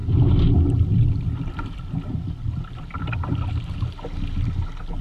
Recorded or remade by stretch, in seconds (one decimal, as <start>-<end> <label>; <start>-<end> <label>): 0.0-3.0 remade; 3.0-5.0 recorded